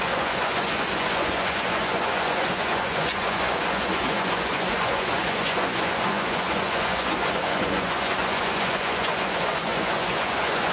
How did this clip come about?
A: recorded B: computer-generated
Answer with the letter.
B